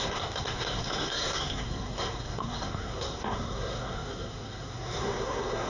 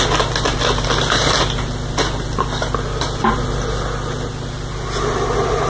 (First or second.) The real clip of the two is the second